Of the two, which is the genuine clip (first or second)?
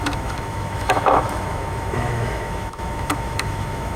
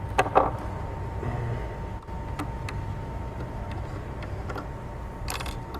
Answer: second